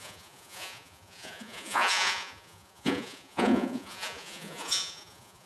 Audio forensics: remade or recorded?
remade